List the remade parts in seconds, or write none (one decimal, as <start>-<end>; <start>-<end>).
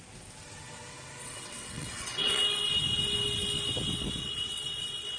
1.2-2.4; 4.2-5.2